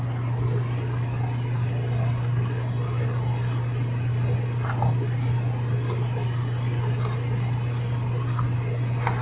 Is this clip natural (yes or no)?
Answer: yes